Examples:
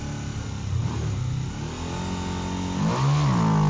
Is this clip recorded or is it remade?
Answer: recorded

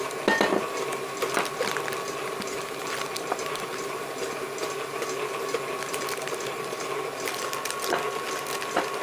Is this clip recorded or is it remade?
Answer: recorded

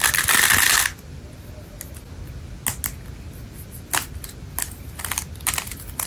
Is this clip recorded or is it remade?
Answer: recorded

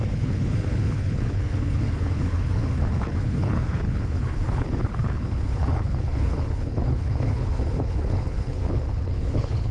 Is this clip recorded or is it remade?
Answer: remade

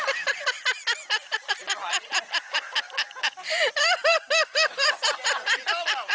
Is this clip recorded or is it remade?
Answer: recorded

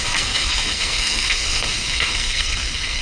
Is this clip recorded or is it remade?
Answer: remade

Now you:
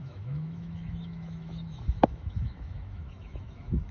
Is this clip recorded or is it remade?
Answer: remade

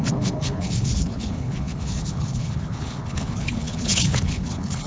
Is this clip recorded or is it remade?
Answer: remade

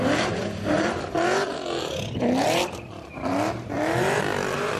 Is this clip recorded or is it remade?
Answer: remade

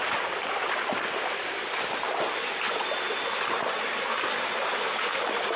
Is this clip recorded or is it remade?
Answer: recorded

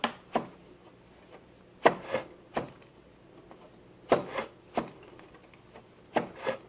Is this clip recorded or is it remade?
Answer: recorded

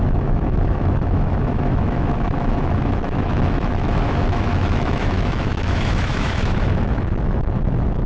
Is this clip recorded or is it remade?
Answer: remade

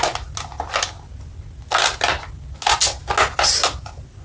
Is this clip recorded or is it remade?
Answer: recorded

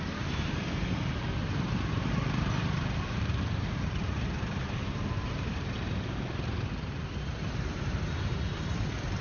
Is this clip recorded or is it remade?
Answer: remade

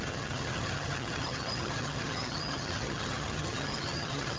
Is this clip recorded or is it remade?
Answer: remade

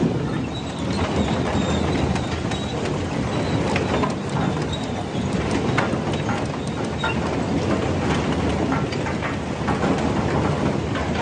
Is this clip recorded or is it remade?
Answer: recorded